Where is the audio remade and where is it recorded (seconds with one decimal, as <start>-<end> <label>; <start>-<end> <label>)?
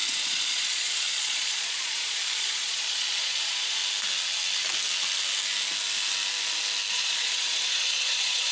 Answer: 0.0-3.8 remade; 3.8-6.9 recorded; 6.9-8.5 remade